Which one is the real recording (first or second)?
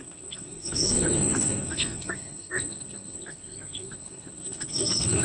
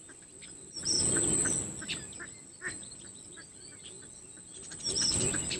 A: second